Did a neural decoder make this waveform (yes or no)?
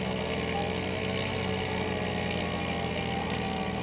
no